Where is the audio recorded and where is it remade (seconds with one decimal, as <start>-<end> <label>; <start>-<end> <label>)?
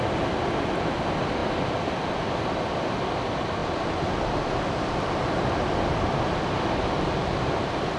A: 0.0-8.0 recorded